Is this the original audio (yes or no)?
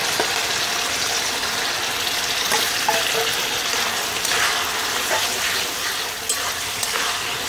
yes